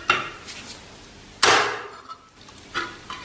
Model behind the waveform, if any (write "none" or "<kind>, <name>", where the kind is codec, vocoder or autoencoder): none